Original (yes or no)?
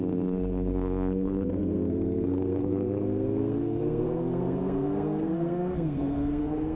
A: no